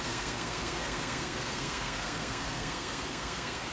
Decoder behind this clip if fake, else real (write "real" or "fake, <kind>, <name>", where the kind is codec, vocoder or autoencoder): fake, codec, SNAC